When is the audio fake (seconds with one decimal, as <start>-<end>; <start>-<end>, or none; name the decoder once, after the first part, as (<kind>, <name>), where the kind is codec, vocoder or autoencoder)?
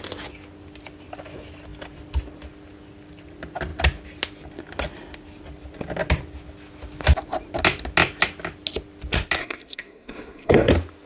9.4-10.7 (codec, SNAC)